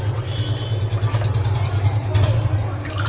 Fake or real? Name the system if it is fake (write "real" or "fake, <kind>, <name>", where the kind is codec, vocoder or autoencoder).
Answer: real